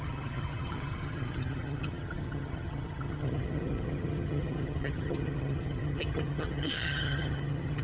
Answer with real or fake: fake